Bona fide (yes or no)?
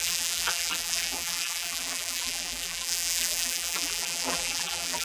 no